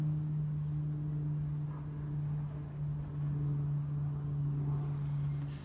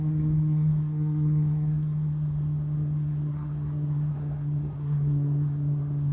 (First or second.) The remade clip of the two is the second